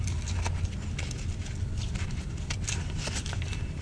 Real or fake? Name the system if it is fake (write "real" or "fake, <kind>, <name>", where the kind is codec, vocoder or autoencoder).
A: real